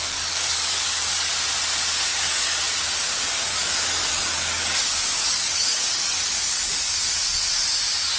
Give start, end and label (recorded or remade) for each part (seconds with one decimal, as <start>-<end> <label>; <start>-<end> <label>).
0.0-1.3 remade; 1.3-2.1 recorded; 2.1-2.6 remade; 2.6-3.5 recorded; 3.5-6.7 remade; 6.7-8.2 recorded